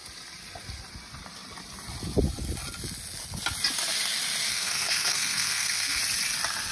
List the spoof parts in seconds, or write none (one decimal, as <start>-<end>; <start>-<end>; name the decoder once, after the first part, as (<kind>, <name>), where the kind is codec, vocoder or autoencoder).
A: 4.5-6.0 (codec, SNAC)